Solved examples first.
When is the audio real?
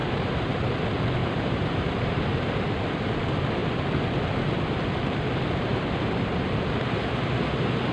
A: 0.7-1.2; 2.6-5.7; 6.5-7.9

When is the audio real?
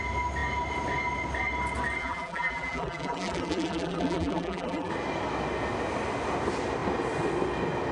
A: 0.0-2.0; 4.9-7.9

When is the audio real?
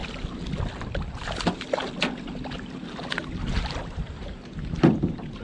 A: 0.0-0.8; 1.8-4.2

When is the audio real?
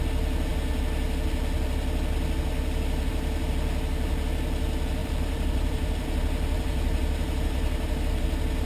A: 0.0-5.0; 8.2-8.7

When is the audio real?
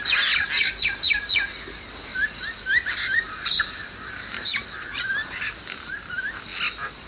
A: 0.0-2.1; 5.9-7.1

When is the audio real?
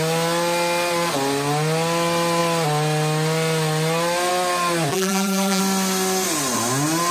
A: 0.0-4.9; 5.6-7.1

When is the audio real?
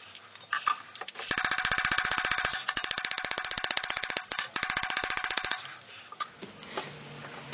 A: 0.0-2.5; 5.9-7.5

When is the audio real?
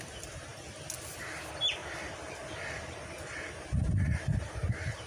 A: 0.0-1.8